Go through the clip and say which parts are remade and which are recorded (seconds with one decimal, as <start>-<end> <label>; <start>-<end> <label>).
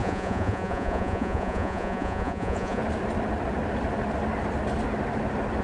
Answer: 0.0-2.8 remade; 2.8-5.6 recorded